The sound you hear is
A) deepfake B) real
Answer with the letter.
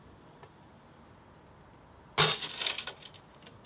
B